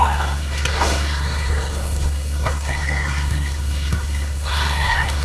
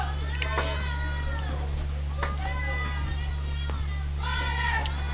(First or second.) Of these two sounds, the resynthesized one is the first